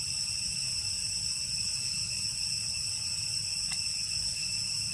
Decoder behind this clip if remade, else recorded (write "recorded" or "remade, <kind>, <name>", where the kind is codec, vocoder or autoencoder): recorded